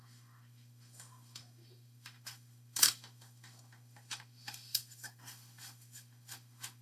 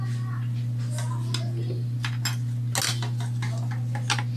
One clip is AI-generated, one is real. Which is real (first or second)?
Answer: second